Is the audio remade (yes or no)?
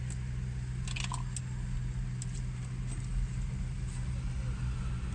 no